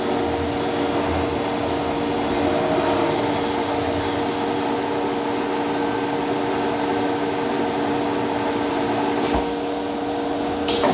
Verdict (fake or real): real